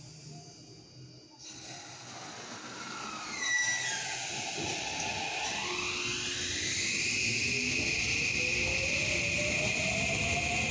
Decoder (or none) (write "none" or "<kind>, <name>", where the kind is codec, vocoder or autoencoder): none